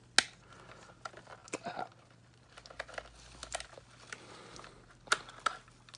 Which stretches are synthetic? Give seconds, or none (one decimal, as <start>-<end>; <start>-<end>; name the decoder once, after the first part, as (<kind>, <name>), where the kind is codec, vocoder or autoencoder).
none